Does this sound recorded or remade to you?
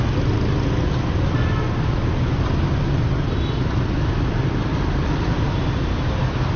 recorded